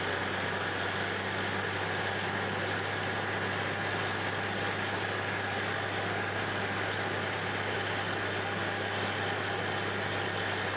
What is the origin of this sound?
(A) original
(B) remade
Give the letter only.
A